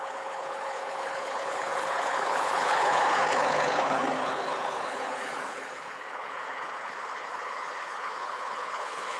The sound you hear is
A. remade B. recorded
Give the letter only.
A